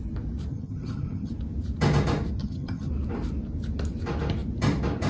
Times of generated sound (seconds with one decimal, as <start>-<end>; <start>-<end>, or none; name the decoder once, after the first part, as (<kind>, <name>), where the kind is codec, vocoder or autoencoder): 0.5-1.3 (vocoder, HiFi-GAN); 2.4-2.9

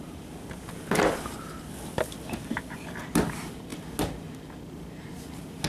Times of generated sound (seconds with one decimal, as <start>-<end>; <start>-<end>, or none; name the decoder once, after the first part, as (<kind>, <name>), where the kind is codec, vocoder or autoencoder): none

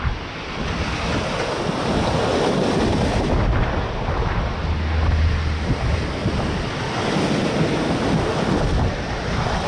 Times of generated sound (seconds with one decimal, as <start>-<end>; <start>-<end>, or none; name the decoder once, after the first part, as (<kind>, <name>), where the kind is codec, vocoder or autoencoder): none

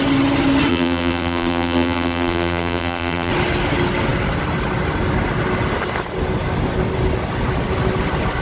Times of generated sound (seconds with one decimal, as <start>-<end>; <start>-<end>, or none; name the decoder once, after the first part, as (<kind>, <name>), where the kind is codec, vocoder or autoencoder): 0.7-3.3 (vocoder, BigVGAN v2)

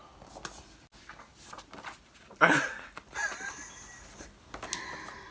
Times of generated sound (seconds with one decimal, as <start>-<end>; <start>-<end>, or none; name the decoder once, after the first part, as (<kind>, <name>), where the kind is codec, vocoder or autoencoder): none

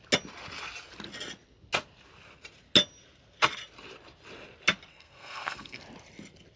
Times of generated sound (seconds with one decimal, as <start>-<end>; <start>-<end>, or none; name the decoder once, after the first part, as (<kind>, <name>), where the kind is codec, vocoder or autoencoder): 4.9-5.8 (codec, SNAC)

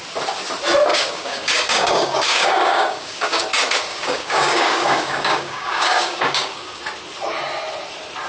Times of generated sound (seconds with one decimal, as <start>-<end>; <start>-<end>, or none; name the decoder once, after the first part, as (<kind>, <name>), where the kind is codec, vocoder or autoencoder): 0.9-3.4 (codec, DAC); 3.9-6.8